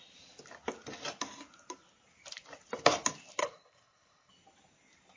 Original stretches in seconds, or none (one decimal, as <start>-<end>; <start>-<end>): 0.0-3.4; 4.3-5.2